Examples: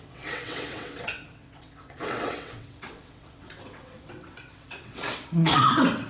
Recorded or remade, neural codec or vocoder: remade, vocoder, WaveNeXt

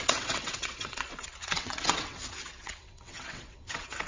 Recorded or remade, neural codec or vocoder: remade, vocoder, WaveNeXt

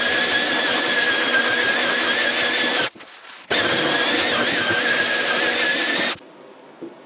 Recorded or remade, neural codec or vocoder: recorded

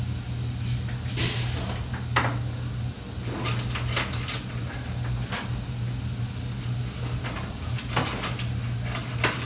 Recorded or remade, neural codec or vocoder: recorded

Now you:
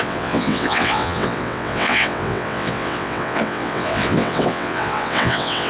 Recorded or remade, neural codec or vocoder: remade, vocoder, WaveNeXt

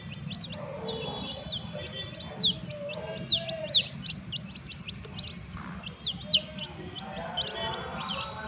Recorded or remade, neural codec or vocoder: recorded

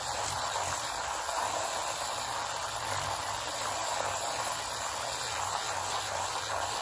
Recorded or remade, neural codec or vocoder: recorded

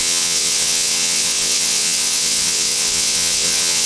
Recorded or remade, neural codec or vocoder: remade, vocoder, WaveNeXt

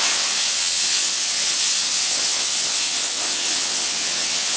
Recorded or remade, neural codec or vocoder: remade, vocoder, WaveNeXt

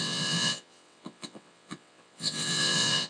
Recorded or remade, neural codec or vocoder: remade, vocoder, WaveNeXt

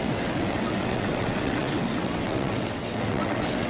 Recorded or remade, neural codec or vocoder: remade, vocoder, WaveNeXt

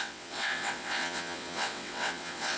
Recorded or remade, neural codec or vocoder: remade, vocoder, WaveNeXt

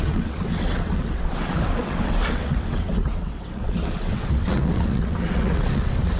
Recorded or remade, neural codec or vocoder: remade, vocoder, WaveNeXt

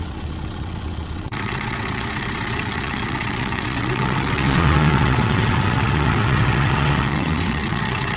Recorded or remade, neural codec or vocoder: remade, vocoder, WaveNeXt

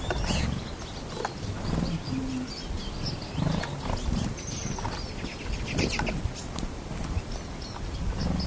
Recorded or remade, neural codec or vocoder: recorded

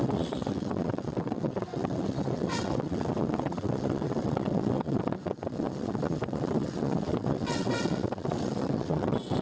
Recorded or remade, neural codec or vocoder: remade, vocoder, WaveNeXt